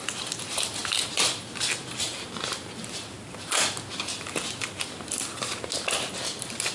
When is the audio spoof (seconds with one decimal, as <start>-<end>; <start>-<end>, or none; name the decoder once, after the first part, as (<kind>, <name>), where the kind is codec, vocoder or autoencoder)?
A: none